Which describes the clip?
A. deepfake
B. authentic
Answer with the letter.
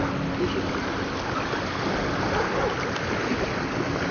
B